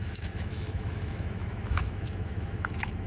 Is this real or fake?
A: fake